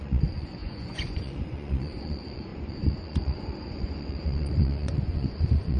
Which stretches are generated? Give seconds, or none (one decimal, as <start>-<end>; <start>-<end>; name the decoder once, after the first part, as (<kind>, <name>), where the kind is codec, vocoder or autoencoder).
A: 0.0-5.8 (vocoder, Vocos)